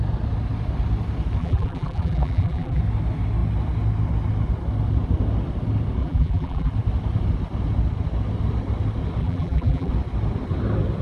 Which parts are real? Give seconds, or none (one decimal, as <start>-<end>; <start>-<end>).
0.0-1.4; 2.8-6.0; 6.7-9.2; 9.9-11.0